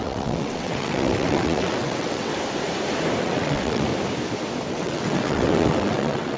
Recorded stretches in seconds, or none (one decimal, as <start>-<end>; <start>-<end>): 2.3-3.2; 3.9-4.7